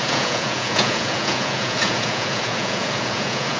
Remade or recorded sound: remade